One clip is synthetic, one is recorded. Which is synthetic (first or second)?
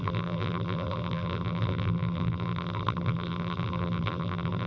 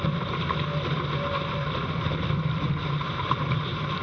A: first